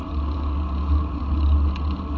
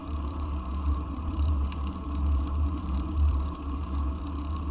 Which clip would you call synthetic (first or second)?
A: second